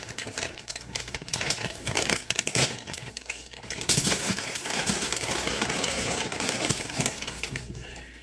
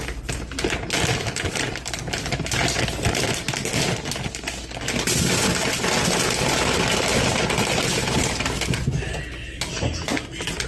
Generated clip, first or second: first